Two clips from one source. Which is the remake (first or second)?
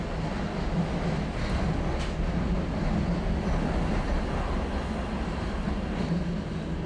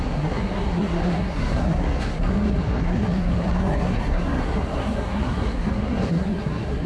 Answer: second